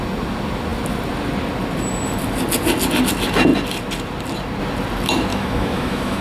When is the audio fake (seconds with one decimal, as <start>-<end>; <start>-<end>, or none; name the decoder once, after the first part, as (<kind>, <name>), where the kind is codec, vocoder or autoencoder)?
5.3-6.2 (autoencoder, DAC-VAE)